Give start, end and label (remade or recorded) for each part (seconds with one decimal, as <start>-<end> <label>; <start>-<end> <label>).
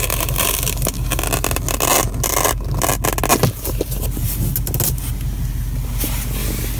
0.0-6.8 recorded